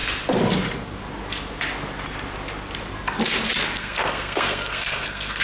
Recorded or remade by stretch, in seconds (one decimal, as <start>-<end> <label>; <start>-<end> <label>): 0.0-3.8 recorded; 3.8-5.4 remade